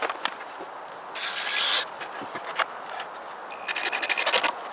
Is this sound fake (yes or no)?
no